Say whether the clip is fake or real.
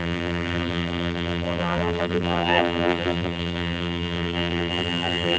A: fake